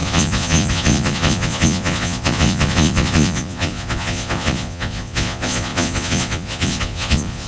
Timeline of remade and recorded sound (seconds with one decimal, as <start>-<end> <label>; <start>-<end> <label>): 0.0-7.5 remade